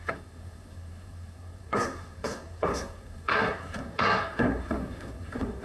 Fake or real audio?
fake